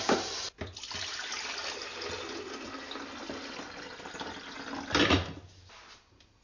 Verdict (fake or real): real